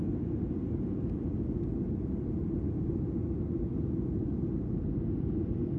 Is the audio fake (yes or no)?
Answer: no